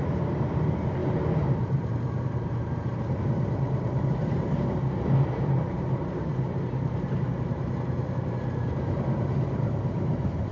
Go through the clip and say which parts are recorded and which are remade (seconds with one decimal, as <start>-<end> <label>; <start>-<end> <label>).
0.0-10.5 remade

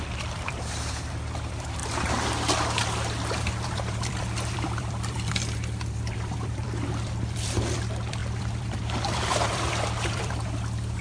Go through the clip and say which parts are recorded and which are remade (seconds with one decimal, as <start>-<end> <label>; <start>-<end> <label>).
0.0-1.8 remade; 1.8-2.3 recorded; 2.3-11.0 remade

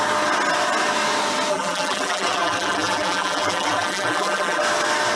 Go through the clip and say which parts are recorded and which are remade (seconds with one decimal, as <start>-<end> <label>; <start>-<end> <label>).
0.0-1.5 recorded; 1.5-4.6 remade; 4.6-5.2 recorded

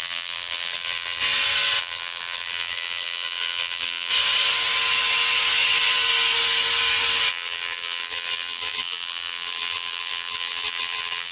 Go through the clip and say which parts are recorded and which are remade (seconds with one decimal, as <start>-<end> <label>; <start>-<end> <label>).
0.0-1.2 remade; 1.2-1.8 recorded; 1.8-4.1 remade; 4.1-7.3 recorded; 7.3-11.3 remade

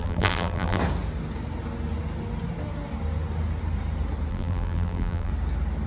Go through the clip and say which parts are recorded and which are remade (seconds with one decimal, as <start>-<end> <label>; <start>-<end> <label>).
0.0-0.8 remade; 0.8-4.3 recorded; 4.3-5.3 remade; 5.3-5.9 recorded